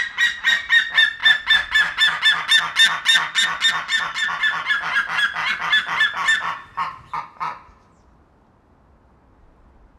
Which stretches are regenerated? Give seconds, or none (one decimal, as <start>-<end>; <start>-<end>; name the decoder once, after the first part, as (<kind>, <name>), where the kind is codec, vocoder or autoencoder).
1.2-2.2 (vocoder, BigVGAN v2)